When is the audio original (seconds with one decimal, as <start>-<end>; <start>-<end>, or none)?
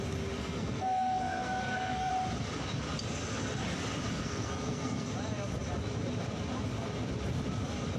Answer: 0.0-0.4; 2.1-4.1; 5.1-8.0